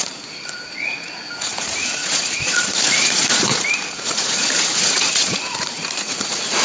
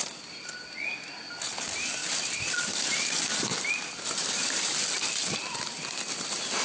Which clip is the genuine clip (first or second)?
second